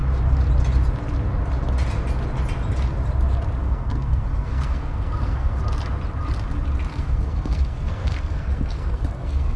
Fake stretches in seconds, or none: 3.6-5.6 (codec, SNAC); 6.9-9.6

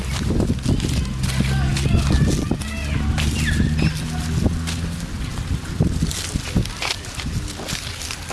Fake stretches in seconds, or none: none

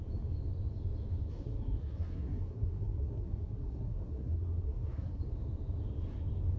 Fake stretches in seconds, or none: 1.3-5.2 (codec, SNAC)

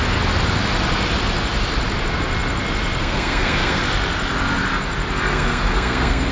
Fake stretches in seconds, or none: 3.0-3.8 (codec, SNAC); 5.3-6.3

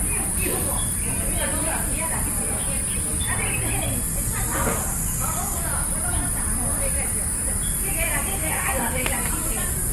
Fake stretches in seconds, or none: 8.3-9.1 (codec, SNAC)

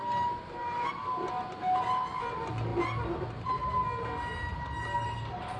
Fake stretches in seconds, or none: none

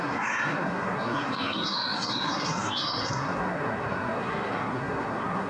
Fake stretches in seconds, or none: 0.0-5.5 (codec, SNAC)

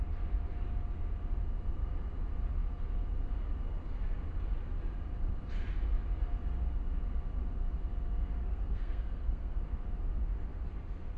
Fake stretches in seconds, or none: 8.4-9.6 (codec, SNAC)